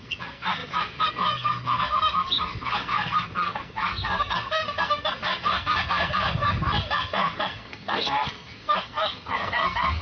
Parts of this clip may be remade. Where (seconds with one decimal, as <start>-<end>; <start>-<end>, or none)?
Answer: 0.0-10.0

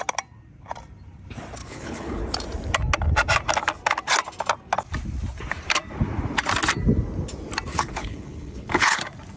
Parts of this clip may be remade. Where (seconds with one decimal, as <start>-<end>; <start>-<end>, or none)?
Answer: 1.6-2.2; 7.7-9.0

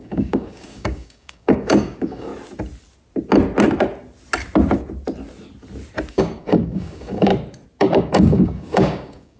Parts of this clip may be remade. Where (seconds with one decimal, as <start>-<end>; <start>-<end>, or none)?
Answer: 0.0-2.3; 6.1-7.3; 7.8-9.4

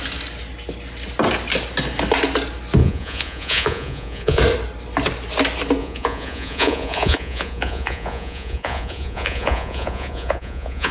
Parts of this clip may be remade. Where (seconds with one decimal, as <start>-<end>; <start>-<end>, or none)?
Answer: 2.8-4.4; 5.8-10.9

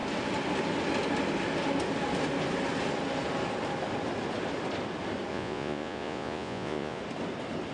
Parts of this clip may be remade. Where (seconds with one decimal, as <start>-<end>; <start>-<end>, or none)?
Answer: 5.3-7.0

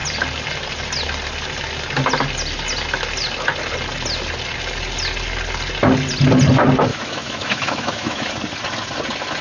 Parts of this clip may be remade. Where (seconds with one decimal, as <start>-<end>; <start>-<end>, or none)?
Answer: 6.9-8.3

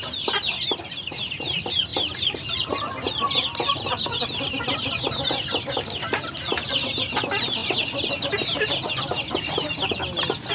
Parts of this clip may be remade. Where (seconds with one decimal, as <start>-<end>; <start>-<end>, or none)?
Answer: none

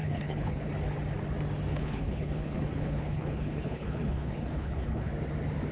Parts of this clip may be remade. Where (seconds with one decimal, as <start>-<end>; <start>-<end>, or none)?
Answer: 0.0-0.7; 1.7-5.1